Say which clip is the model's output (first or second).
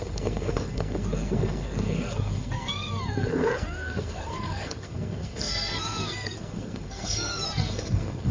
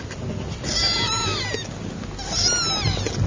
first